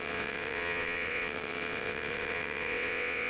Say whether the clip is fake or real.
fake